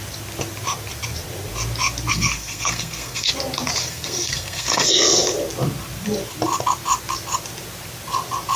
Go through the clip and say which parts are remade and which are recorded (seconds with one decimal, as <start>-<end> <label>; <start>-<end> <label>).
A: 0.0-2.1 recorded; 2.1-3.3 remade; 3.3-3.8 recorded; 3.8-4.9 remade; 4.9-8.6 recorded

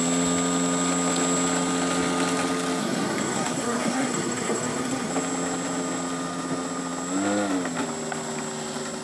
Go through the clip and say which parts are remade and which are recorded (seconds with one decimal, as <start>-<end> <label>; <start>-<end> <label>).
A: 0.0-2.8 recorded; 2.8-5.1 remade; 5.1-9.0 recorded

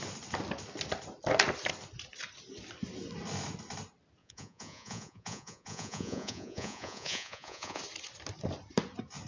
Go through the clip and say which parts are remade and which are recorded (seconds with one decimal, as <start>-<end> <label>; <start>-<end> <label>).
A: 0.0-4.2 recorded; 4.2-7.8 remade; 7.8-9.3 recorded

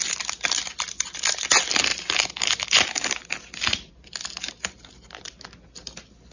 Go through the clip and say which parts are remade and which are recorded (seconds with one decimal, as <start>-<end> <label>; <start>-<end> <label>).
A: 0.0-6.3 recorded

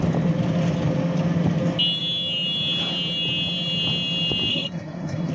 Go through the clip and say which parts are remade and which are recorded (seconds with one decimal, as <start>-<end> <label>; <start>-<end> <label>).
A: 0.0-4.5 recorded; 4.5-5.3 remade

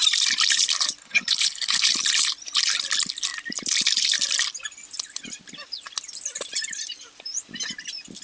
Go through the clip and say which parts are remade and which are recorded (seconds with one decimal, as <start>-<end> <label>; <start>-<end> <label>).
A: 0.0-1.0 recorded; 1.0-1.9 remade; 1.9-8.2 recorded

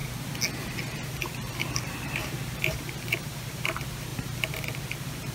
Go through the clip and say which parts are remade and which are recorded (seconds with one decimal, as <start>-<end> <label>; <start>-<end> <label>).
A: 0.0-0.8 recorded; 0.8-5.3 remade

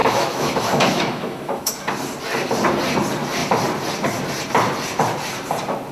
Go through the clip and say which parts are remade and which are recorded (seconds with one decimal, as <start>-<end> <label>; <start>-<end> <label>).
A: 0.0-1.7 remade; 1.7-5.9 recorded